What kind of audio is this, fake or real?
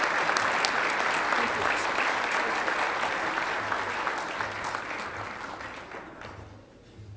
real